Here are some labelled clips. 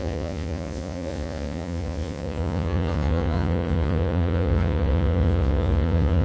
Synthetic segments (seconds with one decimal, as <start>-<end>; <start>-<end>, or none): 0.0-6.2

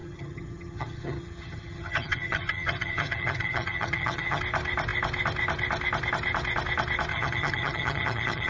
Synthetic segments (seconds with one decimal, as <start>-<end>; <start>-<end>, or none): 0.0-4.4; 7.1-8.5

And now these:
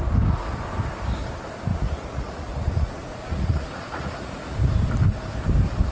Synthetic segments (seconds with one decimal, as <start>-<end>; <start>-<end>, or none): 1.7-4.7

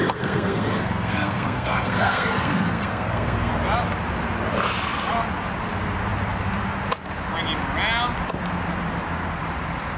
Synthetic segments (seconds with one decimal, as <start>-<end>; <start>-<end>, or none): 0.0-3.5

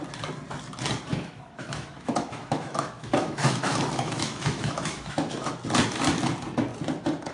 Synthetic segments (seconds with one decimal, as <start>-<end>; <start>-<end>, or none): 1.1-5.5

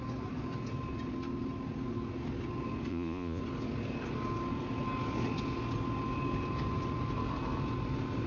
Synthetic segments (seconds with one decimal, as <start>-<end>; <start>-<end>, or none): 2.9-3.4

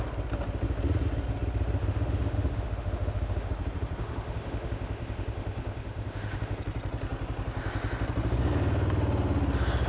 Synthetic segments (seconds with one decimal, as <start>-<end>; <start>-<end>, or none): 1.8-3.5; 4.0-6.6